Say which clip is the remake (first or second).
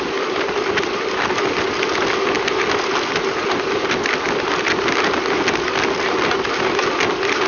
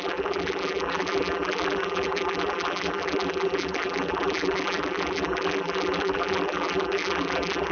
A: second